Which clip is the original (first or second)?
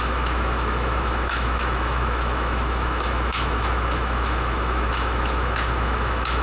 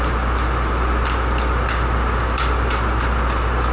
second